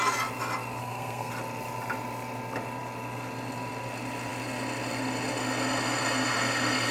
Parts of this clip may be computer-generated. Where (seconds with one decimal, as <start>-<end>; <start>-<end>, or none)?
0.8-1.3